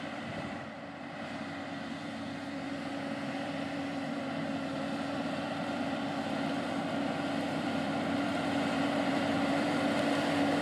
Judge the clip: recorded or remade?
remade